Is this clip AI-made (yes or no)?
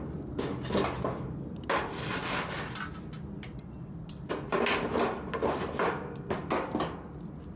no